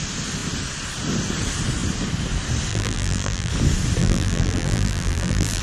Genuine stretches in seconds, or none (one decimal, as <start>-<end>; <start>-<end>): 0.0-2.7; 3.5-4.0